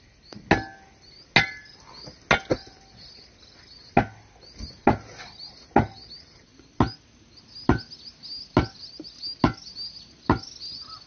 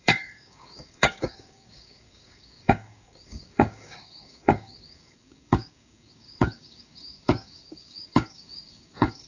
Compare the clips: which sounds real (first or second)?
first